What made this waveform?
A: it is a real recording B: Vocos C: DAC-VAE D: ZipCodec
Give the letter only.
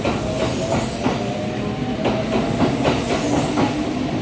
A